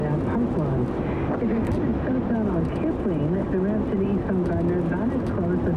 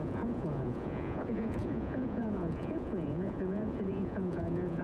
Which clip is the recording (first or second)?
first